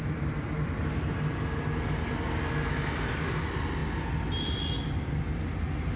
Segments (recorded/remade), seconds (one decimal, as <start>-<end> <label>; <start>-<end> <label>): 0.0-6.0 recorded